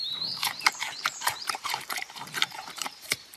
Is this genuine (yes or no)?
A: no